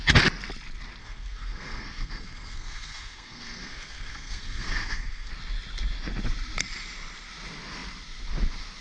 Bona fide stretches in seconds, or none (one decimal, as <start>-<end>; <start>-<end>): 0.0-1.0; 5.3-8.8